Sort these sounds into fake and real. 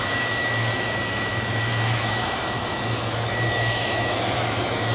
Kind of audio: fake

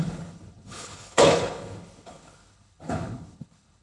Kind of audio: fake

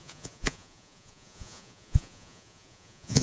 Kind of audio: fake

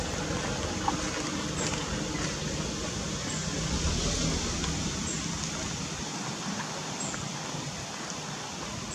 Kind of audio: real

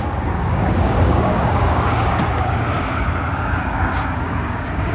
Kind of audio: fake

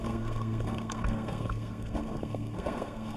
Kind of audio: fake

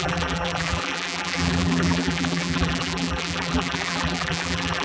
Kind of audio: fake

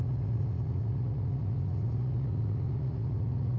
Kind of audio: fake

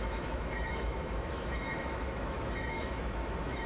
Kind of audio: fake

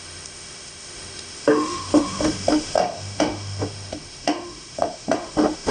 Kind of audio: fake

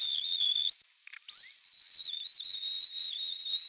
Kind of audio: real